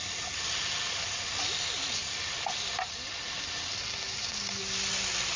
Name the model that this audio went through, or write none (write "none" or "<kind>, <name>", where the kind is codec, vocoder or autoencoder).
none